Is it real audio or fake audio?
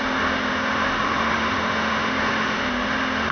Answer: fake